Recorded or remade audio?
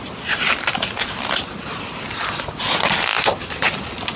recorded